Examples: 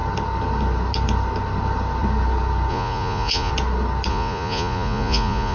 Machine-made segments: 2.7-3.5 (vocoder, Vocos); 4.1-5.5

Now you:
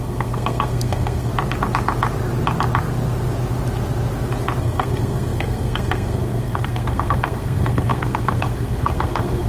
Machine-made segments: 0.0-1.3 (codec, SNAC); 4.6-9.5

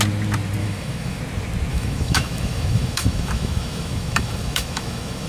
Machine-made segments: 0.6-1.2 (autoencoder, DAC-VAE); 1.7-5.3